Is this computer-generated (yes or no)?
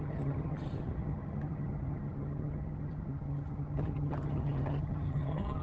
yes